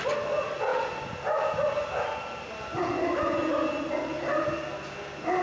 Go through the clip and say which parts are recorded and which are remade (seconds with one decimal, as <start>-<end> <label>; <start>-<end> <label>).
0.0-5.4 recorded